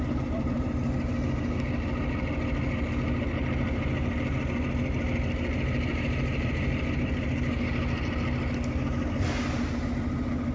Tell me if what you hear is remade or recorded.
recorded